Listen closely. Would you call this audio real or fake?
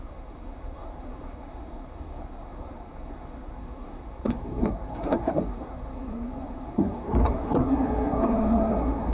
fake